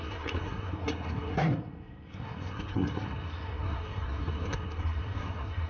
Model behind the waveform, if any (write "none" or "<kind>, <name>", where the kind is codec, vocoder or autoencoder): codec, SNAC